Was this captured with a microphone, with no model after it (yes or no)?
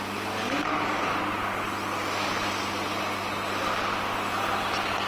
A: yes